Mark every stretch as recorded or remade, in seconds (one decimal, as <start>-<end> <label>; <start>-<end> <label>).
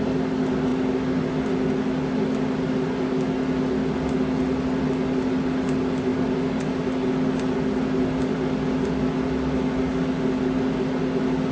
0.0-11.5 recorded